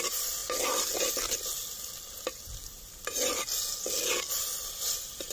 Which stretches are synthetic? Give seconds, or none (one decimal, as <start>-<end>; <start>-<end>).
none